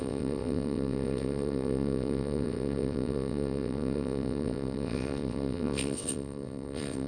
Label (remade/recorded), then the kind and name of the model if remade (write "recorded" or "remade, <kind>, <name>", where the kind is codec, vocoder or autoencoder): remade, vocoder, WaveNeXt